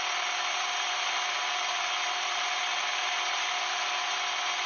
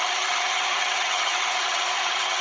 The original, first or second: first